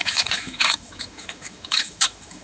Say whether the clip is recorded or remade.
remade